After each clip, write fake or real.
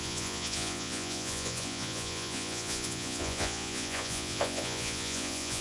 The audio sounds fake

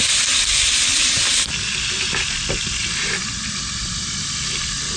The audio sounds real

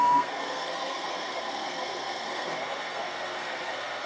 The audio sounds fake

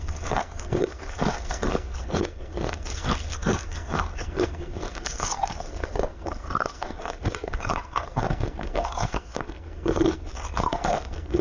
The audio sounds fake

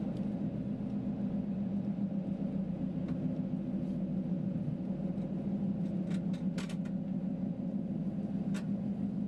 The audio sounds real